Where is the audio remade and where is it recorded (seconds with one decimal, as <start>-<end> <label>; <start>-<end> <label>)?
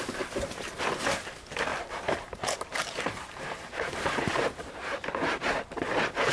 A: 0.0-1.7 recorded; 1.7-5.5 remade; 5.5-6.3 recorded